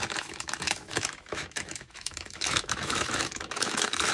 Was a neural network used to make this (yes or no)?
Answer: yes